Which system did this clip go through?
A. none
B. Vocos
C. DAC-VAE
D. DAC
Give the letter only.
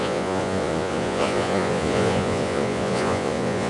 B